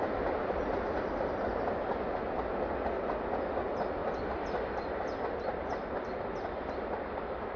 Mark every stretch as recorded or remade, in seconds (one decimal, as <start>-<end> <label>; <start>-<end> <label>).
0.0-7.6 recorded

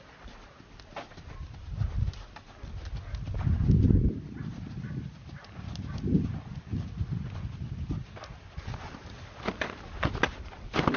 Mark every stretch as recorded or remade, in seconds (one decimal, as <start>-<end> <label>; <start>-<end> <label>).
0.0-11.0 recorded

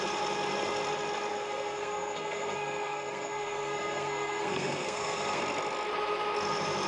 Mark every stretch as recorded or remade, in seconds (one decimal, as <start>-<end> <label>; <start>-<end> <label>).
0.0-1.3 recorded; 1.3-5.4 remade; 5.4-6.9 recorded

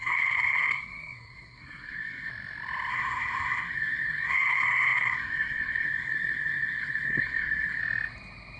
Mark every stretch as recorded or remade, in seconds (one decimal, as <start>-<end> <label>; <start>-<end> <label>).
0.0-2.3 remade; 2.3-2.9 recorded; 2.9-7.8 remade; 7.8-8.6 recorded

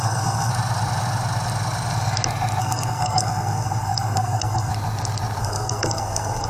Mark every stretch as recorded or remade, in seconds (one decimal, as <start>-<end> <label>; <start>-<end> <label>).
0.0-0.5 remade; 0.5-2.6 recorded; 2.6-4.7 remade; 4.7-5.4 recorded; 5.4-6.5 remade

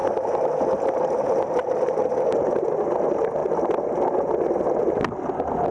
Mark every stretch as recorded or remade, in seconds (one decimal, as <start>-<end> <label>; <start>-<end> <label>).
0.0-5.7 recorded